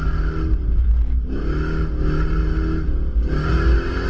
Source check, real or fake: real